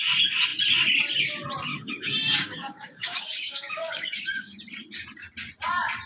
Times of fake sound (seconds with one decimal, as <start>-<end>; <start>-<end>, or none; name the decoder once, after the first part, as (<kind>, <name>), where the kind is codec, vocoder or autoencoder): 1.7-4.6 (codec, DAC)

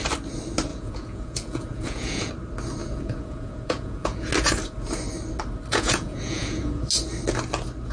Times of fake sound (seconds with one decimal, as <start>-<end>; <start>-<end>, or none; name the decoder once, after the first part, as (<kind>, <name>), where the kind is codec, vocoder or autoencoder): 0.7-2.3 (vocoder, Vocos); 2.8-4.3; 5.7-6.9

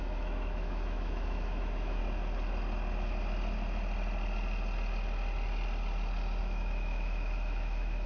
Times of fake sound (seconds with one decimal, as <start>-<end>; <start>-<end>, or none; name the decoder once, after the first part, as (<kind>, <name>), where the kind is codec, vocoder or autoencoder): 0.0-2.0 (autoencoder, DAC-VAE); 6.4-8.1

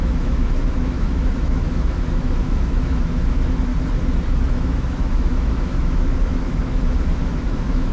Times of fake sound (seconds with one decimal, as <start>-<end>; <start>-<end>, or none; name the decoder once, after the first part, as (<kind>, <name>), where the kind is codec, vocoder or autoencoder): 0.0-3.7 (autoencoder, DAC-VAE); 4.5-7.9

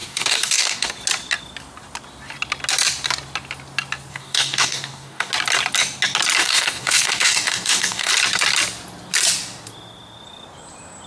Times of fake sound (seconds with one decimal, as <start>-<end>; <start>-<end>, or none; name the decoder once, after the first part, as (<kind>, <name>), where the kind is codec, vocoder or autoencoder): 0.0-0.9 (codec, DAC); 4.1-5.3; 6.4-8.1